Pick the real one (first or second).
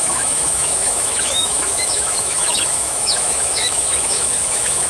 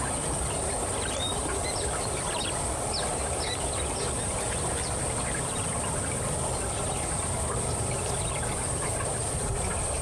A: second